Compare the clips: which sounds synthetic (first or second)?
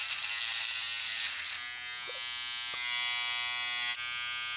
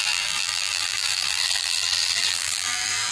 second